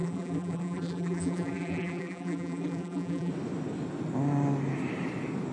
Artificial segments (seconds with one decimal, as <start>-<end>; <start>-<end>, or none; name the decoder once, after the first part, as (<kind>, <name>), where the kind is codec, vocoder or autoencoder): 0.0-3.3 (vocoder, BigVGAN v2)